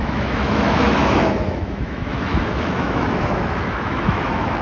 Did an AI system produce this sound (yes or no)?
yes